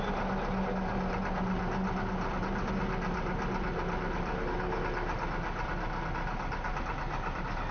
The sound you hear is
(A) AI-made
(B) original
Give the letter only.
B